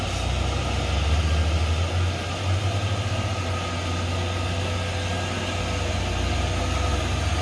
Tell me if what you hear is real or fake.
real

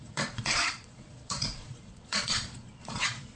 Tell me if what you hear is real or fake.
fake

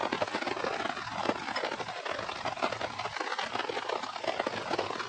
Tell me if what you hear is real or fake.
real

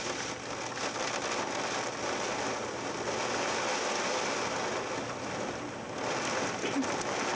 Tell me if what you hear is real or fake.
real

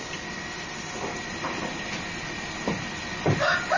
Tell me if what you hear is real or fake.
real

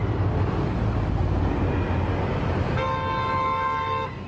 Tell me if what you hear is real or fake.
real